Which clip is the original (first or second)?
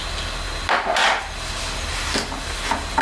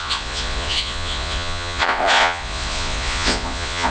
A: first